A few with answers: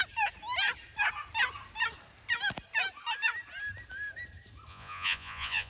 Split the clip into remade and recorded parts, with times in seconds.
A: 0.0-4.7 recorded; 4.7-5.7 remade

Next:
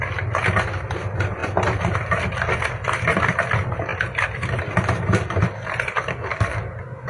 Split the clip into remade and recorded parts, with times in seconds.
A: 0.0-6.1 recorded; 6.1-6.6 remade; 6.6-7.1 recorded

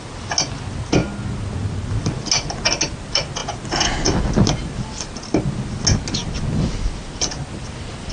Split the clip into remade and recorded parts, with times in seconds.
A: 0.0-8.1 recorded